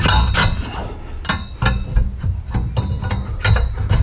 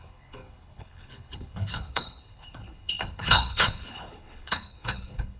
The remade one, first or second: second